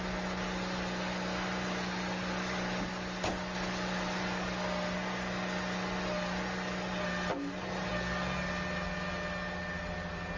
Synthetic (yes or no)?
no